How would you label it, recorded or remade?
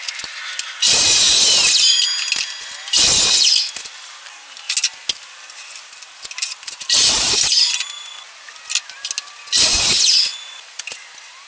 recorded